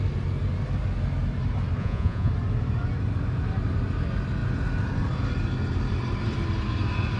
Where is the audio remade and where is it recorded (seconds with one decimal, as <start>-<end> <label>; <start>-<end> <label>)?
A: 0.0-1.8 recorded; 1.8-2.3 remade; 2.3-7.2 recorded